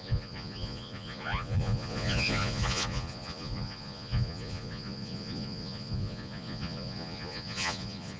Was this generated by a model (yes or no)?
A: yes